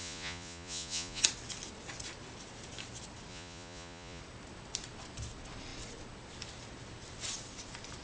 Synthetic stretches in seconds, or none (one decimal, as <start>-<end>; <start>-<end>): 0.0-1.2; 3.3-4.2